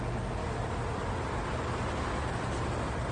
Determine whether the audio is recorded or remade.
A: recorded